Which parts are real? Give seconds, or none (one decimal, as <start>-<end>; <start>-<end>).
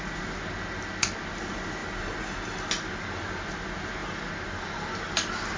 0.0-1.8; 2.3-5.6